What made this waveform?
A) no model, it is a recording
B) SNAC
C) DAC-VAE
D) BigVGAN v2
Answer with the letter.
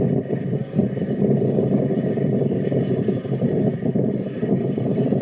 A